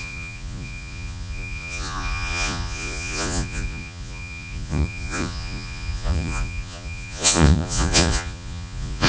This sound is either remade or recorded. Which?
remade